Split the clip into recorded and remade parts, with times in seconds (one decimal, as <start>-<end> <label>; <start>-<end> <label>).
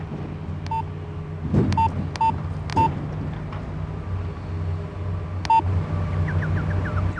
0.0-7.2 recorded